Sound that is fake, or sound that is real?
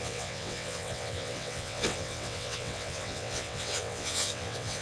fake